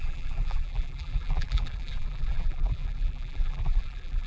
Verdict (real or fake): fake